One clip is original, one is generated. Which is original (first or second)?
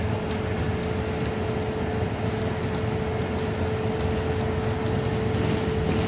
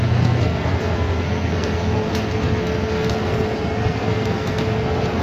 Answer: first